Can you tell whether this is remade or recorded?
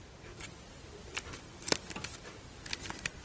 recorded